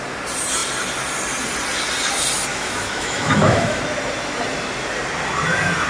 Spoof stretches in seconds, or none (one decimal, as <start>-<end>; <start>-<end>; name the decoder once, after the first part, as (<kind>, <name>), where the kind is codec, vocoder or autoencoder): 2.5-3.8 (autoencoder, DAC-VAE)

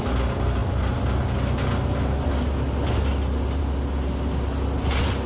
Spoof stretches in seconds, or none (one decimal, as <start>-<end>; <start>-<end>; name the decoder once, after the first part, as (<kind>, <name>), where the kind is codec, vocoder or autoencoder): none

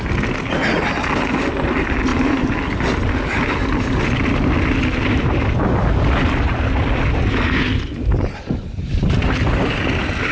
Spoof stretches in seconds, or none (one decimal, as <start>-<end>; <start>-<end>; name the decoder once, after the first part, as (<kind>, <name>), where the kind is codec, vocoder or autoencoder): none

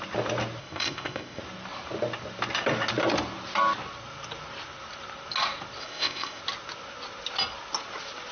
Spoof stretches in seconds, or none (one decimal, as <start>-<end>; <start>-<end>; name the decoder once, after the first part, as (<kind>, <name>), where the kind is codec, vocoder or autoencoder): 0.6-1.4 (codec, ZipCodec); 5.8-6.4

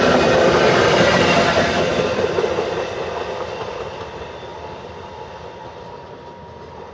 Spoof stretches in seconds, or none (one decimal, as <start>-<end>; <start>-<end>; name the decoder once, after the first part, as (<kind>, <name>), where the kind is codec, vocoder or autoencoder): none